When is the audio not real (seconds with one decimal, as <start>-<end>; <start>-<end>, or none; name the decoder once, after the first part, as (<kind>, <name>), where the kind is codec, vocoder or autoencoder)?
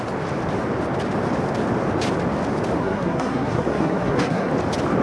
2.8-4.5 (codec, SNAC)